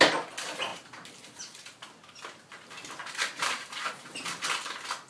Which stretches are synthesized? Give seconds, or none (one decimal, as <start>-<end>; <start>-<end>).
3.0-3.9